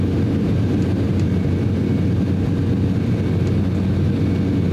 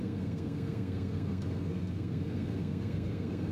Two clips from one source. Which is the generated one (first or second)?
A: second